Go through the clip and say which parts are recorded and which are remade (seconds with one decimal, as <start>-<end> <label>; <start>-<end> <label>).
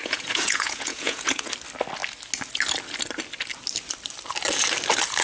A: 0.0-1.5 remade; 1.5-5.2 recorded